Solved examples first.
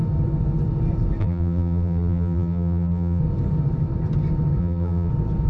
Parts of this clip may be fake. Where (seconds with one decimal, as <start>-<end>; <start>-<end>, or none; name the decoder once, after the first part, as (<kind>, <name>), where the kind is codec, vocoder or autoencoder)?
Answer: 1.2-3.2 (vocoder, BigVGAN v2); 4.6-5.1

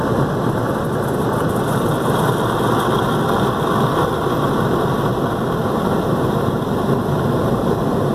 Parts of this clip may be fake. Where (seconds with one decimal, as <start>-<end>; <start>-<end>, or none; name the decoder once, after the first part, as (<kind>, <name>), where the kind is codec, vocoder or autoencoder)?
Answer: 5.6-7.6 (vocoder, BigVGAN v2)

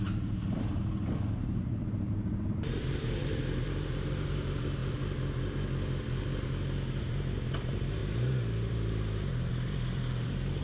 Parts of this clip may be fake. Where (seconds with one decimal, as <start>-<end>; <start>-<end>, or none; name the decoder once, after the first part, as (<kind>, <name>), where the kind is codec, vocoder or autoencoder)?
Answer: 0.0-4.8 (vocoder, BigVGAN v2); 7.0-10.6